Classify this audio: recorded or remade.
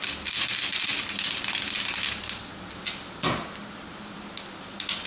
recorded